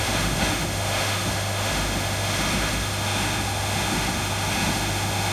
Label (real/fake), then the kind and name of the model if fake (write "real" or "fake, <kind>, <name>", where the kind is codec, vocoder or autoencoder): fake, autoencoder, DAC-VAE